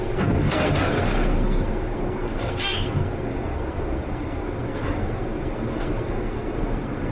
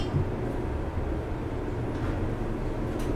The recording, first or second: second